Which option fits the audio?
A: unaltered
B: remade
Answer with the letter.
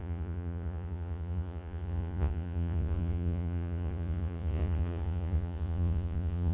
B